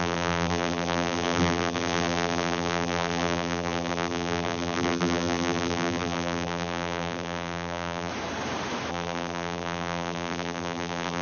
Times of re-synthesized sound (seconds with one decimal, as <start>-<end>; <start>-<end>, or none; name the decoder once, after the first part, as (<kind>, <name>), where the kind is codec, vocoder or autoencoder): 0.0-8.1 (vocoder, BigVGAN v2); 8.9-11.2